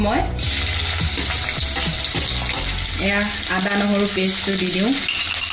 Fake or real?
real